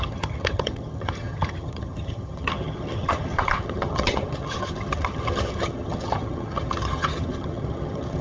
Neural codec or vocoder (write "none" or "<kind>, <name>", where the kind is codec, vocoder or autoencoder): vocoder, HiFi-GAN